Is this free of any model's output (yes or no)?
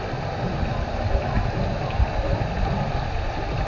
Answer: no